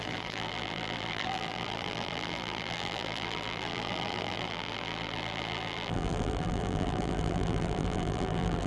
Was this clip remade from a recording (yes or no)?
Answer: yes